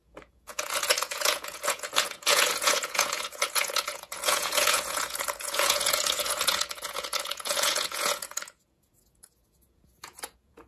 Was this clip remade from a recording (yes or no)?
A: yes